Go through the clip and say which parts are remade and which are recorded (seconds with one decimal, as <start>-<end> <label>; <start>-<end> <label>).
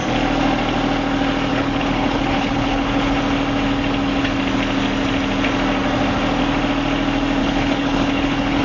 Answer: 0.0-1.5 recorded; 1.5-3.2 remade; 3.2-7.4 recorded; 7.4-8.6 remade